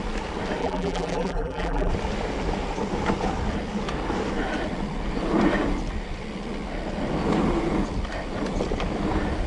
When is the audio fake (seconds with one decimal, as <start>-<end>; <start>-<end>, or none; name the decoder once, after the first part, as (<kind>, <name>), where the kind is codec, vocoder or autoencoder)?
0.6-1.9 (vocoder, BigVGAN v2)

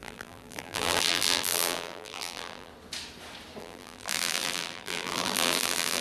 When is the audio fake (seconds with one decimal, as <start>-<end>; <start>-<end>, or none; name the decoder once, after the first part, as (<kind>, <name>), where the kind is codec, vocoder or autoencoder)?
0.0-2.7 (vocoder, BigVGAN v2); 3.6-6.0